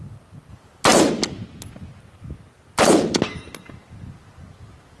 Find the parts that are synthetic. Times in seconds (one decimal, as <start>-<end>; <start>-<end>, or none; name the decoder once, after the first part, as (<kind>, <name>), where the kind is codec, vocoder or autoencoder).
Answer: none